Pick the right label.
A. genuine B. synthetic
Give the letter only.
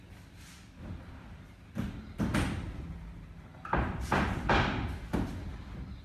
B